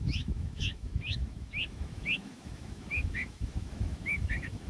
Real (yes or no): no